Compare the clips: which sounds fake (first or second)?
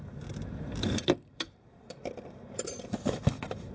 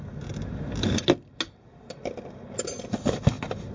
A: first